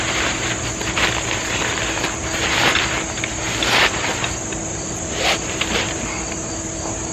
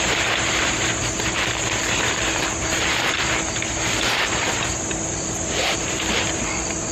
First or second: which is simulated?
second